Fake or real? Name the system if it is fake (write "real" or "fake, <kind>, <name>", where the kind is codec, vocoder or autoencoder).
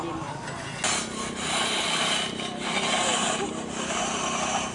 real